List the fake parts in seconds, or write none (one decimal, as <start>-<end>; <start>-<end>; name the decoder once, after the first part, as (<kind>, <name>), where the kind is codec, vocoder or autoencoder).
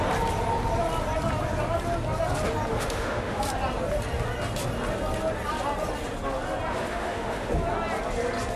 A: 2.7-3.4 (autoencoder, DAC-VAE); 6.7-7.5